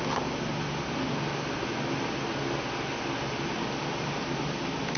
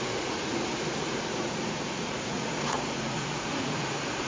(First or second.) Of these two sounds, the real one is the first